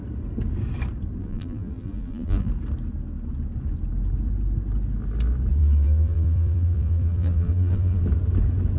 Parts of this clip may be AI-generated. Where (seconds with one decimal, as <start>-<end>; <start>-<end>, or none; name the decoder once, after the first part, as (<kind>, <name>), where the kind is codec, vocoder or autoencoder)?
1.2-2.5 (vocoder, BigVGAN v2); 5.6-8.0